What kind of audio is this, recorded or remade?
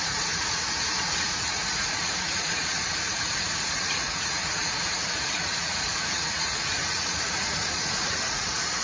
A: remade